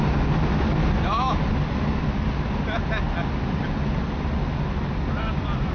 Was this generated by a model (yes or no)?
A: no